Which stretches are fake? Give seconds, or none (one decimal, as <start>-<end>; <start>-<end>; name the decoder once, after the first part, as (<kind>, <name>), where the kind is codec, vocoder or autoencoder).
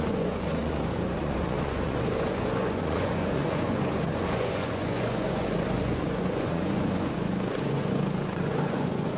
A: 0.0-9.2 (vocoder, Vocos)